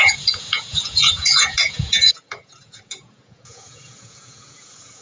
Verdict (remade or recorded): remade